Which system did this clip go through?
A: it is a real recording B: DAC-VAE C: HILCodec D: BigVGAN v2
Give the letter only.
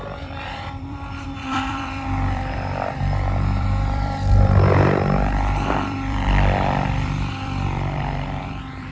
D